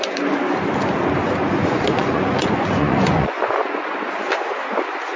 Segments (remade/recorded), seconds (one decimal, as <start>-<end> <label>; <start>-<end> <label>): 0.0-1.6 recorded; 1.6-4.2 remade; 4.2-5.2 recorded